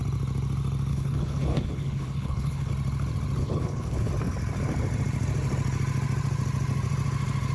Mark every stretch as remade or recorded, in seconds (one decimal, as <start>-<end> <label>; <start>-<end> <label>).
0.0-0.9 recorded; 0.9-2.7 remade; 2.7-3.4 recorded; 3.4-4.1 remade; 4.1-7.5 recorded

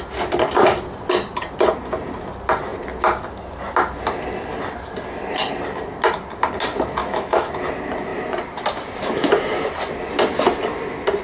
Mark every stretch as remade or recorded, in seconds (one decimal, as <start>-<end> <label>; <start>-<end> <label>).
0.0-7.0 recorded; 7.0-7.5 remade; 7.5-11.2 recorded